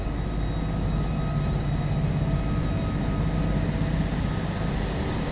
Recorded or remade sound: recorded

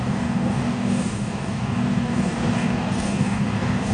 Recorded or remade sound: remade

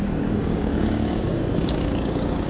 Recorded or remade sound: remade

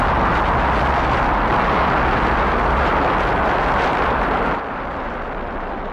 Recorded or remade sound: recorded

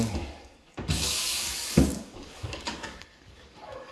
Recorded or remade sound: remade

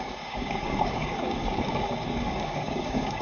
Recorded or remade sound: remade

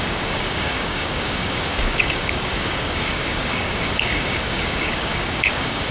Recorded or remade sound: remade